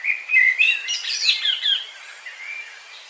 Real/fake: fake